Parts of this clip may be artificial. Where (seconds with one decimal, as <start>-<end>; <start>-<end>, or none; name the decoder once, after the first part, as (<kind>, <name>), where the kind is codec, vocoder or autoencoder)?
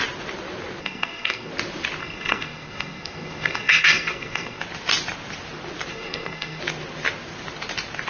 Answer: 0.8-1.5 (codec, SNAC); 2.0-4.6; 5.9-6.6